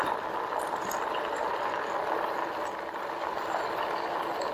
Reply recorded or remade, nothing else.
recorded